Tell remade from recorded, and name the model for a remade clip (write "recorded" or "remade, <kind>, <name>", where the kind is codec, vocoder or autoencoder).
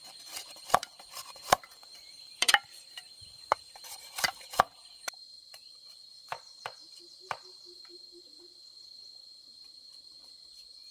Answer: remade, vocoder, BigVGAN v2